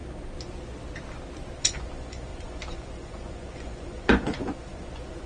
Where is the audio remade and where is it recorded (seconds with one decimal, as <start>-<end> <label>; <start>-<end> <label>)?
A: 0.0-1.6 recorded; 1.6-5.3 remade